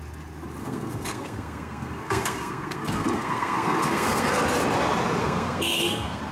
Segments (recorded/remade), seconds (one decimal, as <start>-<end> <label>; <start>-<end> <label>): 0.0-0.6 recorded; 0.6-4.4 remade; 4.4-5.2 recorded; 5.2-6.3 remade